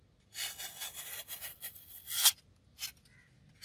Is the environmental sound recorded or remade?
recorded